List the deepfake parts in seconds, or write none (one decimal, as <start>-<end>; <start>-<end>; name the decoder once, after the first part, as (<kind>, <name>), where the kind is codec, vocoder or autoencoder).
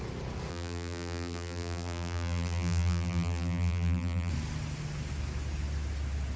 0.5-4.3 (vocoder, BigVGAN v2)